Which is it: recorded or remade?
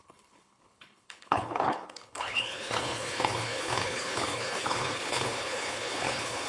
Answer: remade